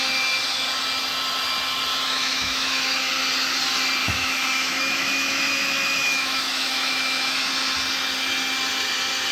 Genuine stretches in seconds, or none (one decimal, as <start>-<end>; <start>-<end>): 0.0-1.9; 3.1-4.0; 7.5-9.3